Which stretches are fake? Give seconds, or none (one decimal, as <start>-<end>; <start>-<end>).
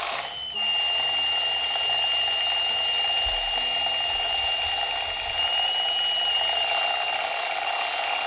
none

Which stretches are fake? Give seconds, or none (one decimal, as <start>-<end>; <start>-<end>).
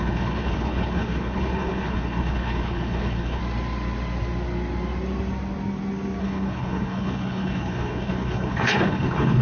0.0-3.4; 6.2-9.4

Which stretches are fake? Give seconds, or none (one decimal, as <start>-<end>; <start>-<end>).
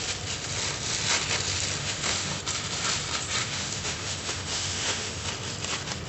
1.8-2.4; 3.4-5.3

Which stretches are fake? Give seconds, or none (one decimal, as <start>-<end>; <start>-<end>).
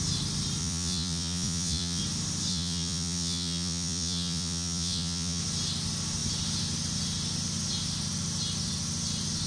0.6-2.0; 2.5-5.4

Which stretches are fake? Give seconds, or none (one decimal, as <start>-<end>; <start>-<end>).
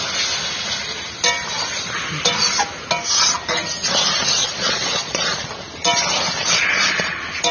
4.4-5.2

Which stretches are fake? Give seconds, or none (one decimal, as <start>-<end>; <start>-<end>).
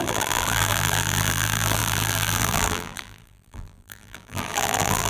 0.0-5.1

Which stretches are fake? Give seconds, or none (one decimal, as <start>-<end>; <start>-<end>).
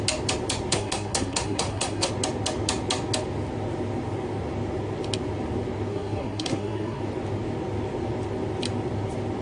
0.7-2.1; 5.9-7.0